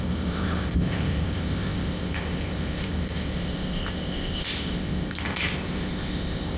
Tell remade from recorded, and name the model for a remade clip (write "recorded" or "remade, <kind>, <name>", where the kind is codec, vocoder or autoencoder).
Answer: remade, codec, ZipCodec